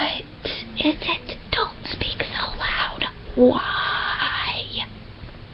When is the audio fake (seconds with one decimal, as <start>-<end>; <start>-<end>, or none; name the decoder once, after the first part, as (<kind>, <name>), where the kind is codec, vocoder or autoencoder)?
1.6-3.6 (vocoder, BigVGAN v2)